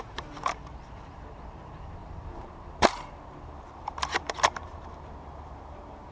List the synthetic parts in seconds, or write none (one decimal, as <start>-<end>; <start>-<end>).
0.0-6.1